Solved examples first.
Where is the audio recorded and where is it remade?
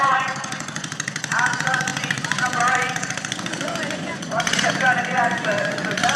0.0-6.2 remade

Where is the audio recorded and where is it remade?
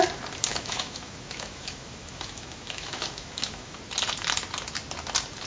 0.0-0.5 recorded; 0.5-3.8 remade; 3.8-5.5 recorded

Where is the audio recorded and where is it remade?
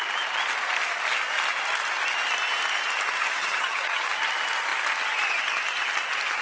0.0-3.2 recorded; 3.2-4.1 remade; 4.1-6.4 recorded